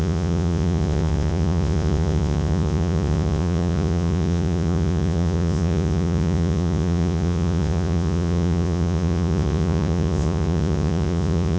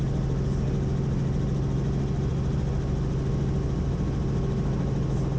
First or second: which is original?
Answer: second